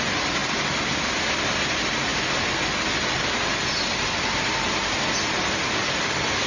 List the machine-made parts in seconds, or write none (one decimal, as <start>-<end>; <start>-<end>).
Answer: none